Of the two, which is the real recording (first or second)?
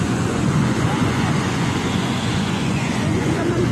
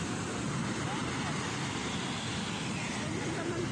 second